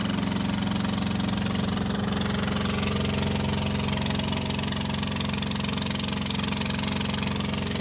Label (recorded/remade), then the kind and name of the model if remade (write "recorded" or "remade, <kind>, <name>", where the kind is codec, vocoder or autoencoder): recorded